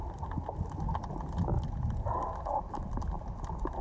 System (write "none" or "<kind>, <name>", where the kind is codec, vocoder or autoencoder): none